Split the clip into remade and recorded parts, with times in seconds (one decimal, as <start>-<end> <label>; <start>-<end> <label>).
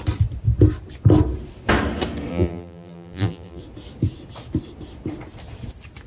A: 0.0-2.3 recorded; 2.3-3.6 remade; 3.6-6.1 recorded